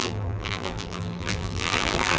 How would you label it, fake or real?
fake